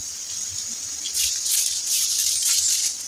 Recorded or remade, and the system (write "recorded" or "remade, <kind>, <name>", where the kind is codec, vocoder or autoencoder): recorded